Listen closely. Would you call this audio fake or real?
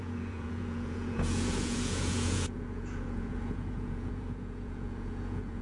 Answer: fake